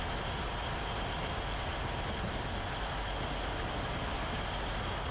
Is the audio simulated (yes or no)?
no